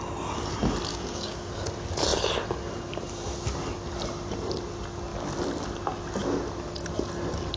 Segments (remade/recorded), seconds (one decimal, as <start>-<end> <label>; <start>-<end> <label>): 0.0-0.9 recorded; 0.9-1.5 remade; 1.5-7.6 recorded